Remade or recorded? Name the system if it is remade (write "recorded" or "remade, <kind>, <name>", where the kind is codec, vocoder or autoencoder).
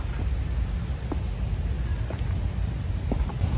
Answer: recorded